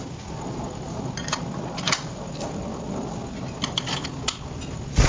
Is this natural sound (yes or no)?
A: yes